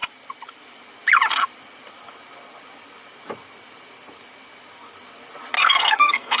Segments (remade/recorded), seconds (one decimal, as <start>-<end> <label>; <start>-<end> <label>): 0.0-5.6 recorded; 5.6-6.4 remade